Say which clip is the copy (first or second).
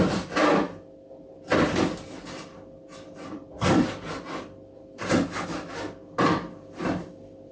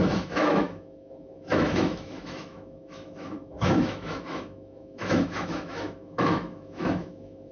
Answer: second